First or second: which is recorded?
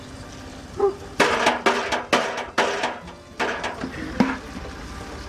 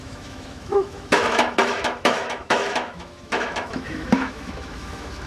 first